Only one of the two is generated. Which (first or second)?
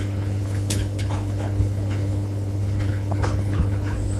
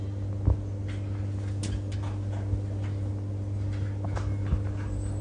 first